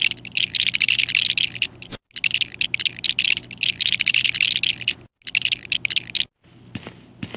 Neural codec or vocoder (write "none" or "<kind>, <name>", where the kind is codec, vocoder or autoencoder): none